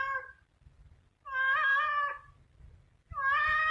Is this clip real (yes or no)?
yes